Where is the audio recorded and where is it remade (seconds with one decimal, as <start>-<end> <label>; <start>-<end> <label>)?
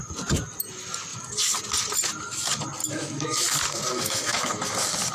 0.0-2.8 recorded; 2.8-3.4 remade; 3.4-3.9 recorded; 3.9-4.5 remade; 4.5-5.1 recorded